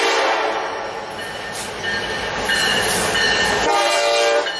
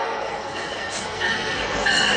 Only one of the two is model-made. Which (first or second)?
second